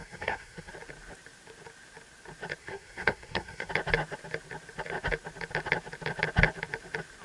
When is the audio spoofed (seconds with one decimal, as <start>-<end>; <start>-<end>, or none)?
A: 0.0-0.7; 2.6-3.7